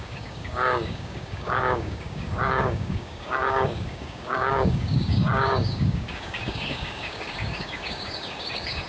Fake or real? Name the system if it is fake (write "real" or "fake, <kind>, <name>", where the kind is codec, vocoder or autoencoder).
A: fake, codec, DAC